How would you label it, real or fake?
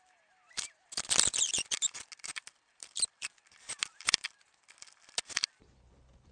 real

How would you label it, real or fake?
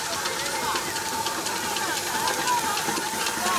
real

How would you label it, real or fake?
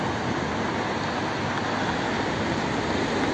real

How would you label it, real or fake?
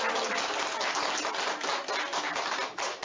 real